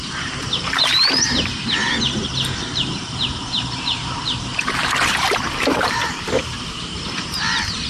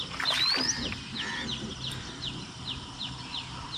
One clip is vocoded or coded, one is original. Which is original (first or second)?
second